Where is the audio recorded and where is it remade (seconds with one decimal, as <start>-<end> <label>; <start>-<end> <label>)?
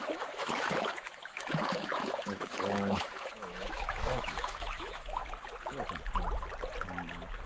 0.0-5.2 remade; 5.2-7.5 recorded